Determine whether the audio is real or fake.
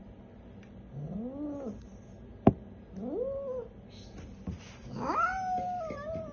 real